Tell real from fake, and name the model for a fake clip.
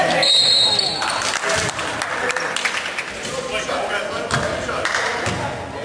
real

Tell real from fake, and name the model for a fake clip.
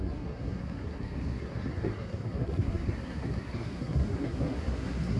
fake, codec, SNAC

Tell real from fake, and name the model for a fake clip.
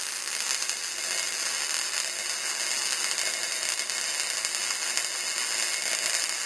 real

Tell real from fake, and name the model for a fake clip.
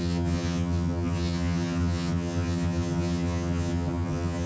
fake, vocoder, HiFi-GAN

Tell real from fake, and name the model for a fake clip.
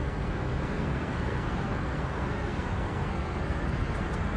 fake, codec, SNAC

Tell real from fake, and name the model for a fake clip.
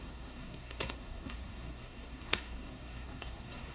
fake, codec, SNAC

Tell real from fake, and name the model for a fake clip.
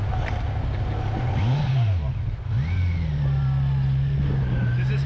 real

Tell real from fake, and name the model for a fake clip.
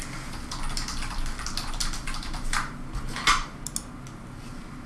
real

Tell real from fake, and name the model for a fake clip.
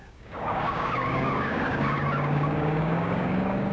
fake, codec, DAC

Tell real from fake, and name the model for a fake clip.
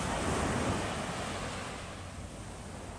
real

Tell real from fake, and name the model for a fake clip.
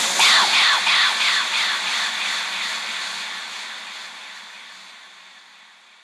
real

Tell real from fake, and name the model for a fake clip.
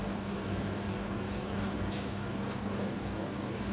fake, codec, DAC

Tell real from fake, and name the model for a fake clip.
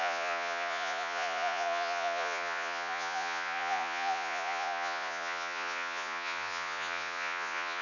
fake, vocoder, Vocos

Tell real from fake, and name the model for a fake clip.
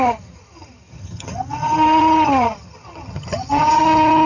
fake, vocoder, HiFi-GAN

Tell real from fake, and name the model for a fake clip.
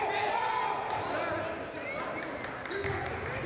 real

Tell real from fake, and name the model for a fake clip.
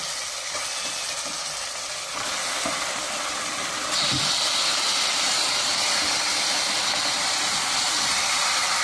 real